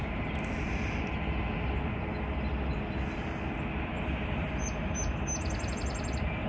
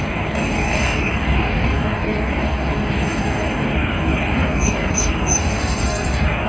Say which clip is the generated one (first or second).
second